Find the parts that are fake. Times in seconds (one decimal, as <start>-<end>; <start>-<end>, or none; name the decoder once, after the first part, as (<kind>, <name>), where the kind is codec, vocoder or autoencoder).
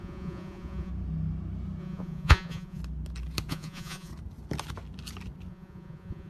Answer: 0.0-0.9 (vocoder, Vocos); 1.8-2.8; 3.5-4.1; 5.5-6.3